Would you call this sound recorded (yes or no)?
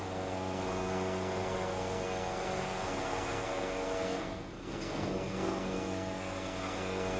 no